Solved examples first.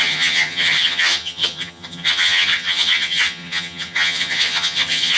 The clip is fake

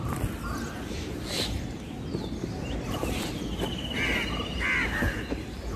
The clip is real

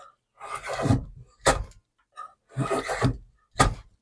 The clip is real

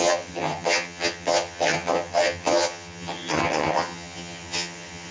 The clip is fake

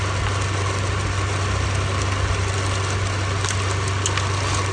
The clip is real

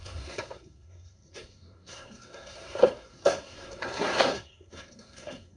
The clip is fake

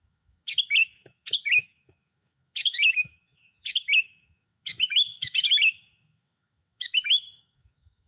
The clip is fake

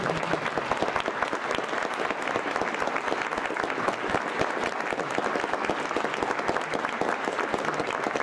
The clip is real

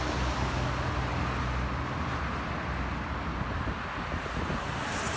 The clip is real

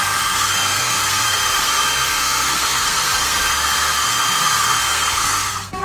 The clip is fake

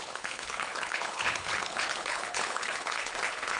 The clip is fake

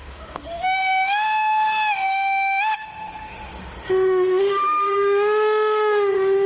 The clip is fake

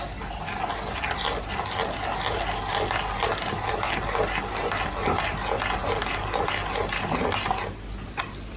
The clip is real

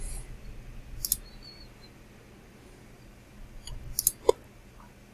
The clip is real